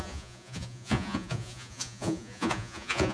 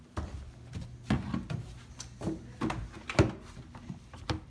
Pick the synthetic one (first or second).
first